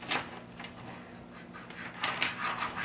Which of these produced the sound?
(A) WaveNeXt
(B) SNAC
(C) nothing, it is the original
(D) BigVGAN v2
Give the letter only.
C